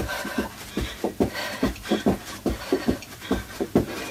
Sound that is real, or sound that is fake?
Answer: fake